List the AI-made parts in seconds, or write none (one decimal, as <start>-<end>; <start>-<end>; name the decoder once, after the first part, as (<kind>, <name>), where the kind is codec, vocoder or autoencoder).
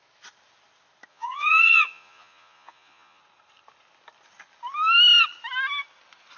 1.1-3.2 (vocoder, Vocos)